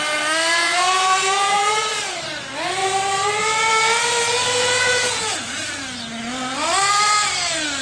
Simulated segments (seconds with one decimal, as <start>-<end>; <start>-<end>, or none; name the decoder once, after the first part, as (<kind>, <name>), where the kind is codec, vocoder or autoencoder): 0.6-1.7 (vocoder, Vocos); 4.6-5.6